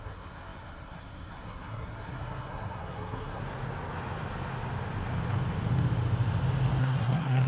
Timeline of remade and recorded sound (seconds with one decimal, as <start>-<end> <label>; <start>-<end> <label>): 0.0-3.4 remade; 3.4-6.8 recorded; 6.8-7.5 remade